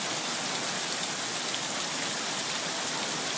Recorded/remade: recorded